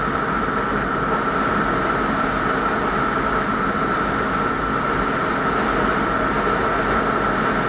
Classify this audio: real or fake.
real